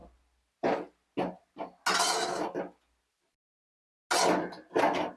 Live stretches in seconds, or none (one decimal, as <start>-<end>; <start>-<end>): 0.0-5.2